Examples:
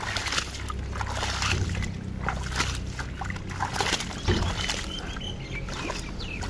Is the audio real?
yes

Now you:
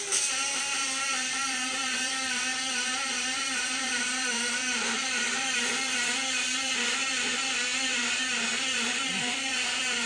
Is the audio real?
no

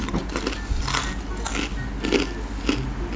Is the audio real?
yes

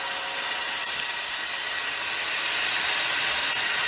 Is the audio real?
yes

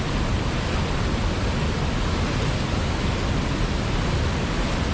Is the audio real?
yes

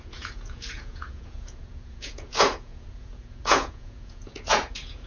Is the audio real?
no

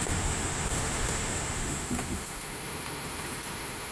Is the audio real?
no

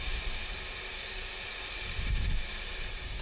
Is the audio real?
yes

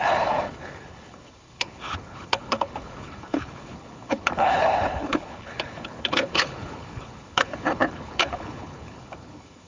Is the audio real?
no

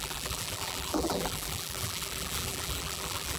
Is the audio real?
no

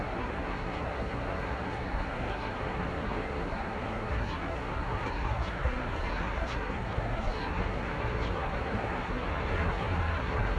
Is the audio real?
no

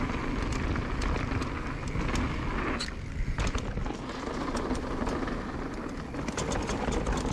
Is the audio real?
yes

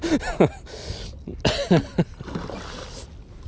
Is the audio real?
yes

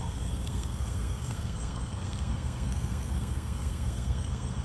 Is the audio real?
no